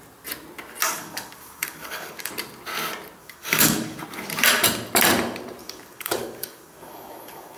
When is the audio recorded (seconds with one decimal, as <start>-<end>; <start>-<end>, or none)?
0.0-0.8; 2.3-3.2; 4.0-5.6